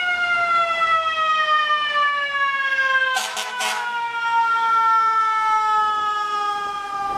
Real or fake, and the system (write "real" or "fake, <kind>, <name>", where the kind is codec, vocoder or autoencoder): fake, autoencoder, DAC-VAE